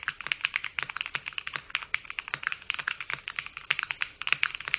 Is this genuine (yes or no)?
yes